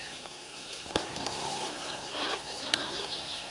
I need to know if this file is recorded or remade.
remade